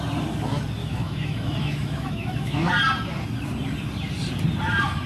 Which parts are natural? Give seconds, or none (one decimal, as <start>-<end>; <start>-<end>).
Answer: 0.0-0.8; 2.7-5.1